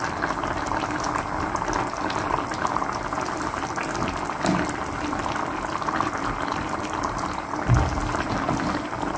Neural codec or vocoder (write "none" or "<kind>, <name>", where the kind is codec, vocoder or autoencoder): none